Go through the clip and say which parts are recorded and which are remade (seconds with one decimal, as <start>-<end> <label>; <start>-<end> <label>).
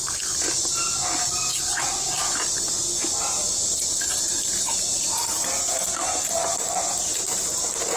0.0-8.0 recorded